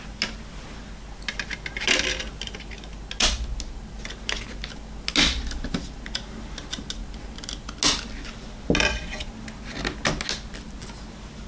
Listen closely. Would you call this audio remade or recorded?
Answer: recorded